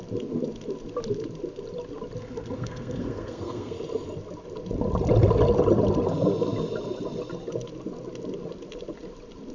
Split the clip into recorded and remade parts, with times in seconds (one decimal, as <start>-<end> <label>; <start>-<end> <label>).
0.0-2.2 recorded; 2.2-3.8 remade; 3.8-9.5 recorded